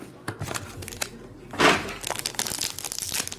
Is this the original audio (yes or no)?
yes